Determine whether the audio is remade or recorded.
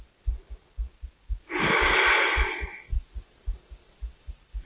recorded